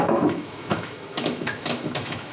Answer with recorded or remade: remade